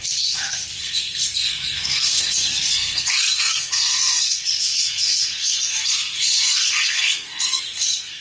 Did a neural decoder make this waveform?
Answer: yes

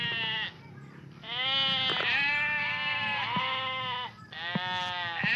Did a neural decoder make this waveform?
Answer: no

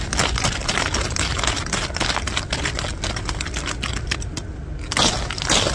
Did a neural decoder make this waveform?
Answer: no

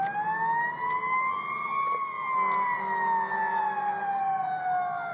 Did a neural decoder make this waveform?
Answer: no